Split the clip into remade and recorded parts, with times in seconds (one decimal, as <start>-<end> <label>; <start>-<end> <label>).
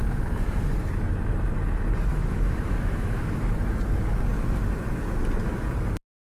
0.0-2.1 recorded; 2.1-3.5 remade; 3.5-6.2 recorded